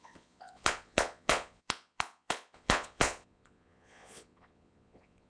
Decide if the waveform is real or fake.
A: fake